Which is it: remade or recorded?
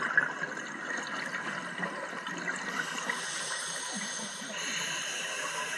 recorded